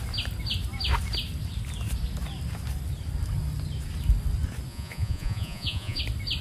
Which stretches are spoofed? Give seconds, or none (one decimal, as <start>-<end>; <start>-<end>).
4.7-6.0

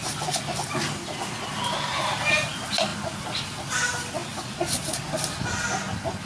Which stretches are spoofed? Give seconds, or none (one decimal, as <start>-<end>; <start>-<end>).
4.2-4.9